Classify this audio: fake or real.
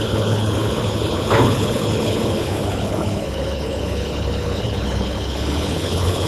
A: fake